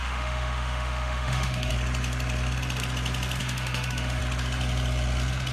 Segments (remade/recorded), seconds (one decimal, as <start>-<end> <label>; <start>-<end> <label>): 0.0-1.7 remade; 1.7-3.4 recorded; 3.4-4.2 remade; 4.2-5.5 recorded